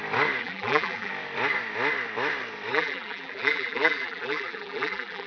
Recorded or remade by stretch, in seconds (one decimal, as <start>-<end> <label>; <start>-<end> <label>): 0.0-0.4 recorded; 0.4-1.1 remade; 1.1-2.7 recorded; 2.7-5.3 remade